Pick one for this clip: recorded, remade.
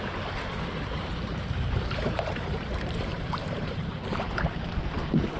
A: remade